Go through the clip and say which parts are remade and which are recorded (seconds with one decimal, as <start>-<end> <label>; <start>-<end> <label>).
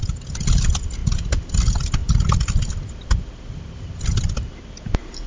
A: 0.0-5.3 recorded